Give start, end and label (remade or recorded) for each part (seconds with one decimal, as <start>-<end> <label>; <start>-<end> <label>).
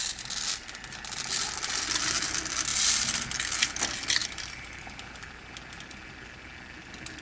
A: 0.0-2.7 recorded; 2.7-3.3 remade; 3.3-4.2 recorded; 4.2-5.4 remade; 5.4-7.2 recorded